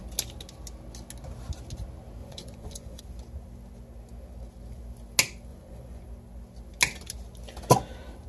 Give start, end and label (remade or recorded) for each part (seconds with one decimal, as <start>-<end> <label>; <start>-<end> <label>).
0.0-2.2 recorded; 2.2-3.0 remade; 3.0-5.5 recorded; 5.5-6.0 remade; 6.0-8.3 recorded